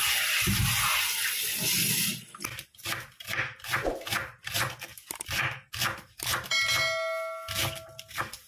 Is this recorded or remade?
recorded